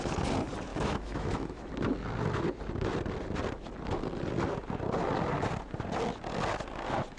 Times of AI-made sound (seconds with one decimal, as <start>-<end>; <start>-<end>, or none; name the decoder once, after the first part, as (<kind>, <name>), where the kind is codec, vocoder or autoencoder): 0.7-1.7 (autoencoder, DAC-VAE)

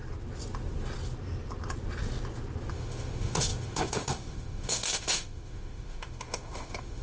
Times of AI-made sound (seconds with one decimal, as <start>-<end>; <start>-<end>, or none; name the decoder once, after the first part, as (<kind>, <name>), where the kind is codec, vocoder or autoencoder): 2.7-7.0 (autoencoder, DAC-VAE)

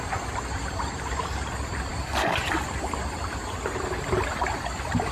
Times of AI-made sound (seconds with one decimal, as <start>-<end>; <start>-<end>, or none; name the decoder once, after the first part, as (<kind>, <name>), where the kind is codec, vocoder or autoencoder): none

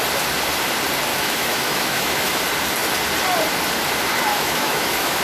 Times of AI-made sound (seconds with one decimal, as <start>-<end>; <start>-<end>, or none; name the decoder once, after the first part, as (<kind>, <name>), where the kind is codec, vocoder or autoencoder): 1.1-2.4 (autoencoder, DAC-VAE); 4.3-5.2